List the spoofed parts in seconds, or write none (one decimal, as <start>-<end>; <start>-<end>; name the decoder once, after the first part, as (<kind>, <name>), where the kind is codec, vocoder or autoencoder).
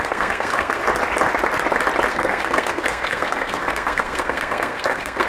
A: 0.0-0.8 (codec, SNAC); 2.1-5.3